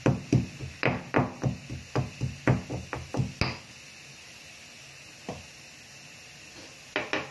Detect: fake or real real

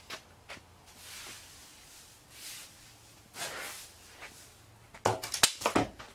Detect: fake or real real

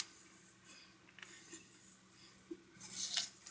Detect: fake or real real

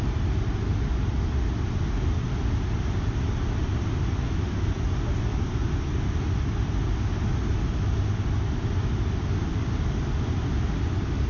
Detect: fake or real real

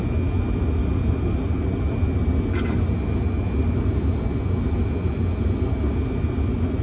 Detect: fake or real real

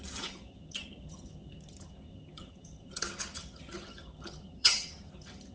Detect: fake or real fake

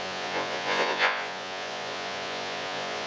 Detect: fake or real fake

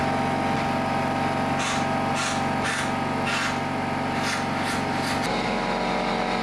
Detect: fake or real real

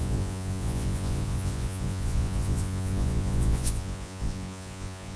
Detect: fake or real fake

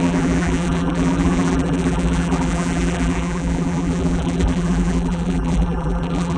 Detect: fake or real fake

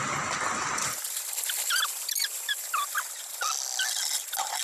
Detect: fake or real real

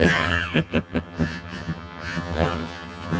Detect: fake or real fake